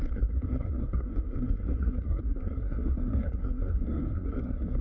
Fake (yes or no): yes